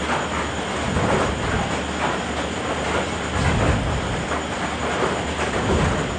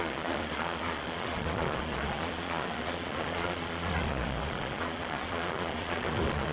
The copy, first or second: second